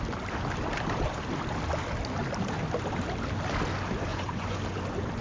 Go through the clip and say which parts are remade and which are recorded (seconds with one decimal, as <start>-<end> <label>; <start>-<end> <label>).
0.0-4.1 recorded; 4.1-4.6 remade; 4.6-5.2 recorded